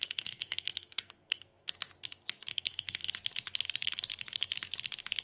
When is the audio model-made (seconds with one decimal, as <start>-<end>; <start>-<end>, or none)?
0.0-1.7; 2.5-3.1